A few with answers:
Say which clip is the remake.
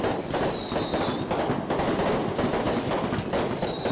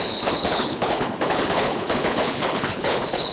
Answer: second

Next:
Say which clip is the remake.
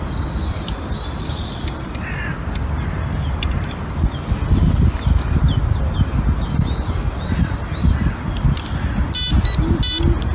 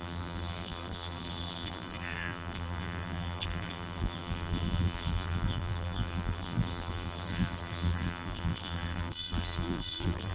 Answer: second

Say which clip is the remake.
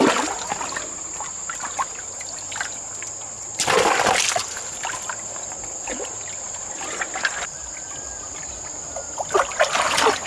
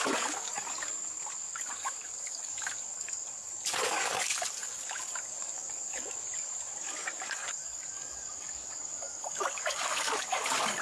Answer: second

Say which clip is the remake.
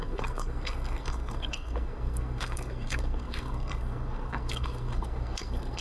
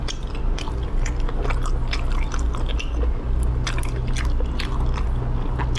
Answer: first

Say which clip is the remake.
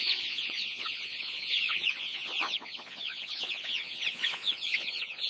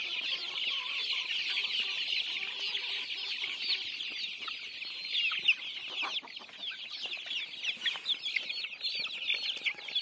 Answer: first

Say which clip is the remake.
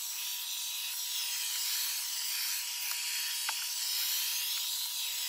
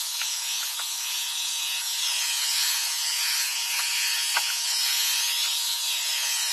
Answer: second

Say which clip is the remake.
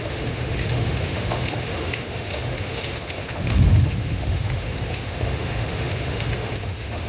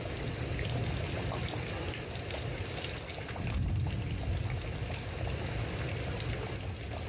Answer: first